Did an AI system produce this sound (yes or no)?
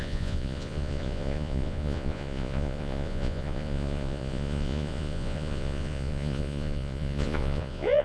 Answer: yes